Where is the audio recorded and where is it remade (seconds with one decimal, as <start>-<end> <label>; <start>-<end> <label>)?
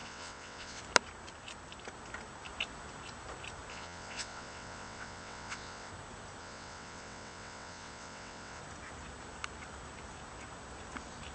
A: 0.0-0.8 remade; 0.8-3.7 recorded; 3.7-5.9 remade; 5.9-6.4 recorded; 6.4-8.6 remade; 8.6-11.3 recorded